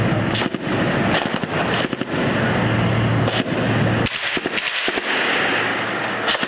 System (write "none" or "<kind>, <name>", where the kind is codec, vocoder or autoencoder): none